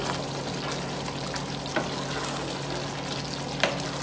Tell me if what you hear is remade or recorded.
recorded